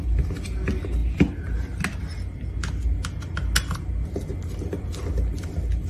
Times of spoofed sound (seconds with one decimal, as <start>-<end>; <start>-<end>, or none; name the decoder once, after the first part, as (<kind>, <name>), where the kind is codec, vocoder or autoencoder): none